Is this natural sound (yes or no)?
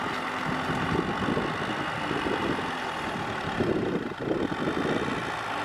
yes